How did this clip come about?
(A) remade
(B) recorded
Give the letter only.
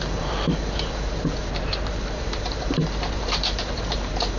A